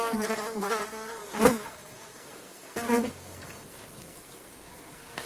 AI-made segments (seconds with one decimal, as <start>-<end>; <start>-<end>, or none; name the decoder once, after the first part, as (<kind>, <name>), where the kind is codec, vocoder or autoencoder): 0.0-5.3 (codec, SNAC)